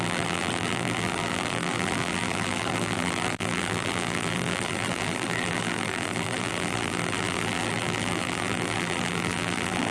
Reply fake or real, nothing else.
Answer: fake